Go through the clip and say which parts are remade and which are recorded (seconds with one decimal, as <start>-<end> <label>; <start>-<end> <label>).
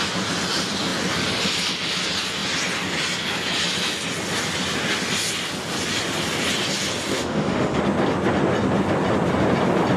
0.0-7.1 recorded; 7.1-7.8 remade; 7.8-10.0 recorded